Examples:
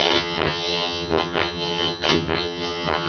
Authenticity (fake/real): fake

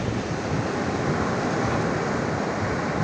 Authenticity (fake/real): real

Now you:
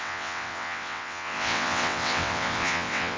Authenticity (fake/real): fake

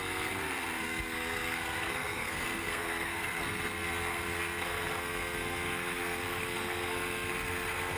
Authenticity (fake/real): fake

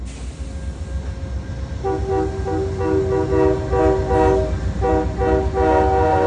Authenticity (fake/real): real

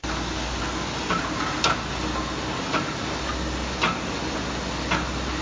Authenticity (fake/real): real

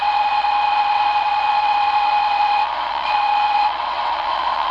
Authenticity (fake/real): fake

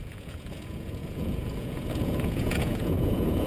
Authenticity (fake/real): fake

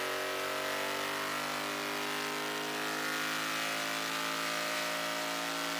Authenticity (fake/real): real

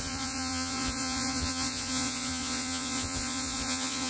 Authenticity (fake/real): fake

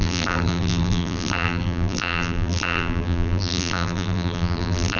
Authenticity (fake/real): fake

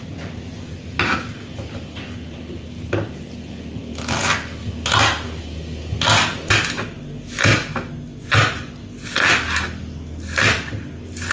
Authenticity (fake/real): real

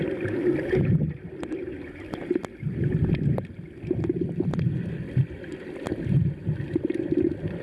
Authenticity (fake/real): real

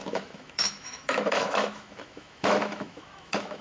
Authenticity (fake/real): fake